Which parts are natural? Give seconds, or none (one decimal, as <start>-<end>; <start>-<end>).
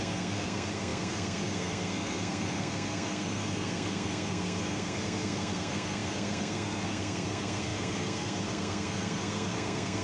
none